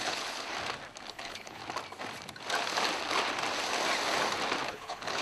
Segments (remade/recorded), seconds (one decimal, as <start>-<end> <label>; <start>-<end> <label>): 0.0-0.5 remade; 0.5-1.1 recorded; 1.1-1.6 remade; 1.6-4.7 recorded; 4.7-5.2 remade